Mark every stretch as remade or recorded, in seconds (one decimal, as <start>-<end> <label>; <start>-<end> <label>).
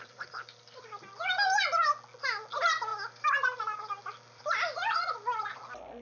0.0-1.1 remade; 1.1-2.9 recorded; 2.9-5.6 remade; 5.6-6.0 recorded